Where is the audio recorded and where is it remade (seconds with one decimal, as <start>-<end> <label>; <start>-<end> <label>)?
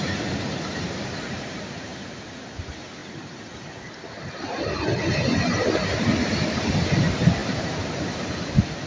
0.0-3.0 remade; 3.0-6.5 recorded; 6.5-8.9 remade